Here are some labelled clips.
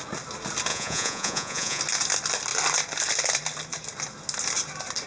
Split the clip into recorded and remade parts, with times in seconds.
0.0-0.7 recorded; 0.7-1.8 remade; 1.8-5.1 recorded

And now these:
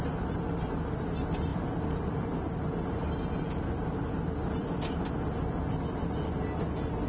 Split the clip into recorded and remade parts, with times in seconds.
0.0-7.1 recorded